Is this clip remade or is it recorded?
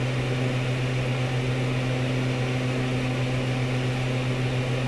recorded